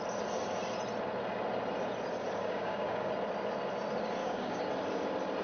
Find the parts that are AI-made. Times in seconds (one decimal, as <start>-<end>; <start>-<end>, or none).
2.4-3.1; 4.2-4.7